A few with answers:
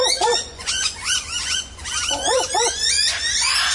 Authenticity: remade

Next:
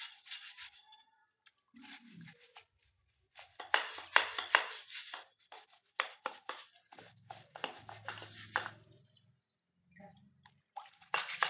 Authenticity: recorded